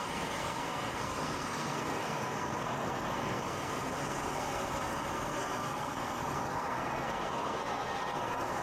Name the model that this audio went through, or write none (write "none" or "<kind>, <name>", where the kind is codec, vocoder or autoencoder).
codec, SNAC